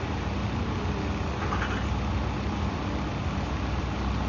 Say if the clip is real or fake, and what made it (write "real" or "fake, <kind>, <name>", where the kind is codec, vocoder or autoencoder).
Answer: real